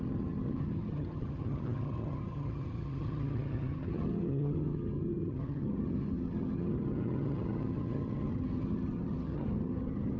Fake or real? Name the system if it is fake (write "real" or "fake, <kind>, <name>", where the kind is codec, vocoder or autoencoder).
fake, vocoder, HiFi-GAN